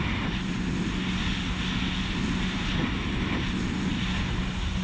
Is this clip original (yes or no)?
yes